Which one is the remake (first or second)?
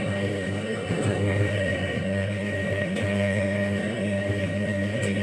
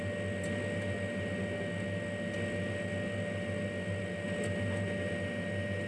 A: first